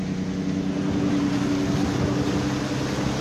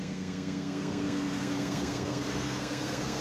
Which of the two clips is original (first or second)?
first